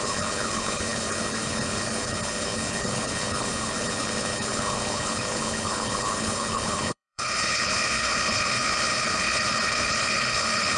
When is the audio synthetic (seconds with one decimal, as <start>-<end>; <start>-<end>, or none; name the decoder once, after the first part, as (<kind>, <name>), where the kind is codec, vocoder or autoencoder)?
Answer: 0.0-10.8 (codec, HILCodec)